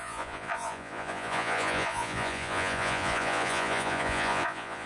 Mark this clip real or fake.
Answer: fake